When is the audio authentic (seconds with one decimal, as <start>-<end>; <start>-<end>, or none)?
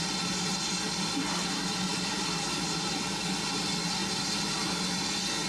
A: 0.0-5.5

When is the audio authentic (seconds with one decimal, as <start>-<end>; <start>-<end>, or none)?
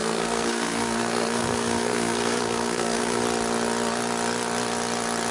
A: 3.2-5.3